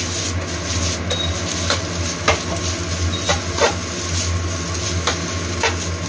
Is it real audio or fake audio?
real